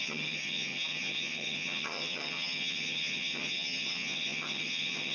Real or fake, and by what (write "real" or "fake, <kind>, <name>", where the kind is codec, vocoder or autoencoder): fake, vocoder, HiFi-GAN